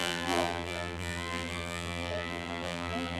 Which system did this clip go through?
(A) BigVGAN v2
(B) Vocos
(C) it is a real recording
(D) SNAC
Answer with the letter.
A